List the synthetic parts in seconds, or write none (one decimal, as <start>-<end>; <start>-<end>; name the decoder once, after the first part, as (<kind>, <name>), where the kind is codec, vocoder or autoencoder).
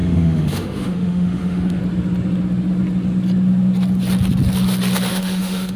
0.0-1.8 (autoencoder, DAC-VAE); 5.1-5.8